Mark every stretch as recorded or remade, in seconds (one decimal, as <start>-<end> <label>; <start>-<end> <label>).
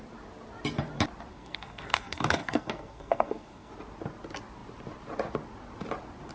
0.0-1.3 recorded; 1.3-3.7 remade; 3.7-6.3 recorded